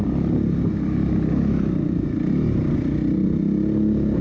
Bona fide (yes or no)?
yes